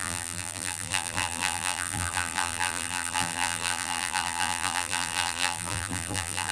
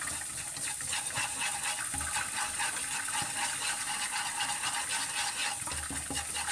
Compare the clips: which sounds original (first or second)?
second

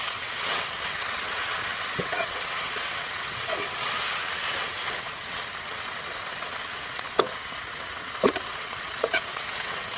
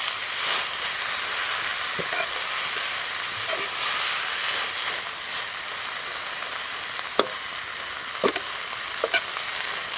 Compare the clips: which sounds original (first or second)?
second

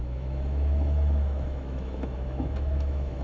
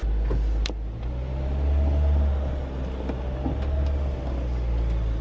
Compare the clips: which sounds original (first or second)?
second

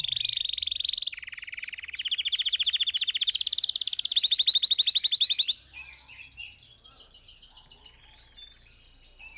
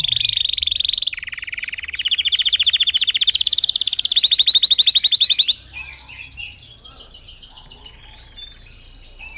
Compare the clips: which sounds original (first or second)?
first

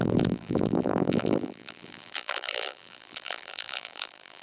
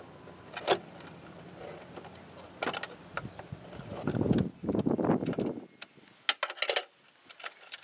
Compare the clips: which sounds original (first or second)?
second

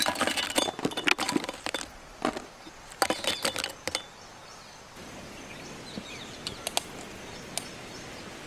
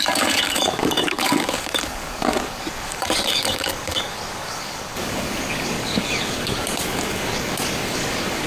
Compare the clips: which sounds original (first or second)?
first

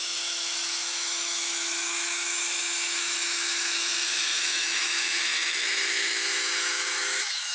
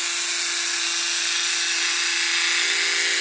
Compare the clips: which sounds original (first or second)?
second